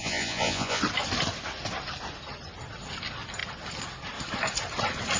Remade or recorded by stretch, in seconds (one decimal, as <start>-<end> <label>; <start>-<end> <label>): 0.0-0.8 remade; 0.8-5.2 recorded